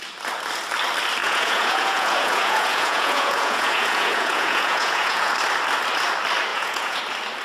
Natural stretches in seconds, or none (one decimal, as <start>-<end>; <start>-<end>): 0.0-1.2; 5.3-6.5; 7.0-7.4